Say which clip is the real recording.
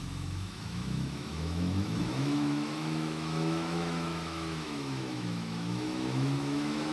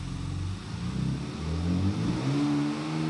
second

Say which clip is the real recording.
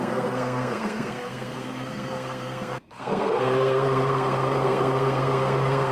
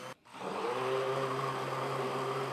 second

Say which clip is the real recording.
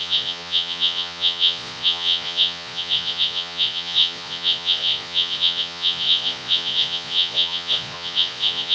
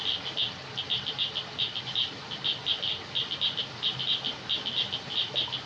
second